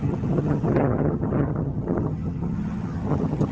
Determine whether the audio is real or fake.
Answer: fake